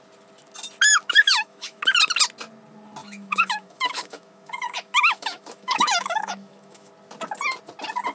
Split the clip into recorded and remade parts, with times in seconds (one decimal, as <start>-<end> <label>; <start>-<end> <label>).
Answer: 0.0-0.9 recorded; 0.9-1.8 remade; 1.8-3.0 recorded; 3.0-6.9 remade; 6.9-8.1 recorded